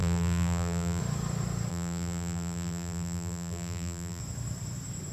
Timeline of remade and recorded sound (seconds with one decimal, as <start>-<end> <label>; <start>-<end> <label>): 0.0-1.0 remade; 1.0-1.7 recorded; 1.7-4.2 remade; 4.2-5.1 recorded